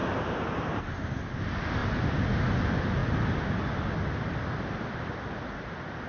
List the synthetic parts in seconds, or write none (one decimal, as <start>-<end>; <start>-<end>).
none